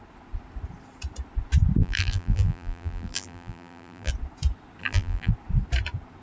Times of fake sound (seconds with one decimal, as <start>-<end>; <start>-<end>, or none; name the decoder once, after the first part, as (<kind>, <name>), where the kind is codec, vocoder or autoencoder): 1.8-4.1 (vocoder, BigVGAN v2); 4.8-5.3